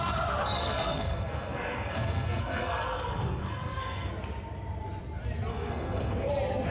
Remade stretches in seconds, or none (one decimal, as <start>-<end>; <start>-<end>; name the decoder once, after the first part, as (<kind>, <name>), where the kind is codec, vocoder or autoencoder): 0.6-4.1 (codec, SNAC); 5.5-6.3